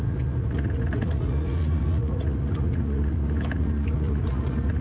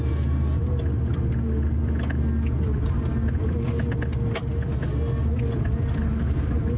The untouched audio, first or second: second